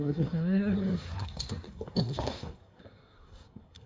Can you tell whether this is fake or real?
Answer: fake